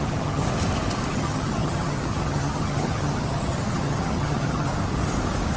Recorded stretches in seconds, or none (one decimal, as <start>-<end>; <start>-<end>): 0.4-1.1; 4.7-5.6